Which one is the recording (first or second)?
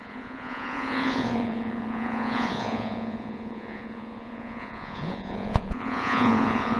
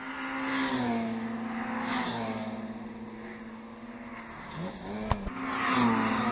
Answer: second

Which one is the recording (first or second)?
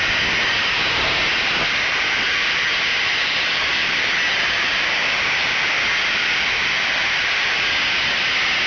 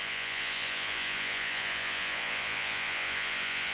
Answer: first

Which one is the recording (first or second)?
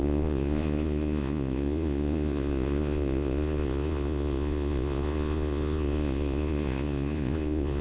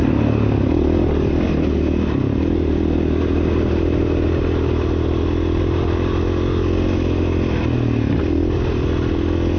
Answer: second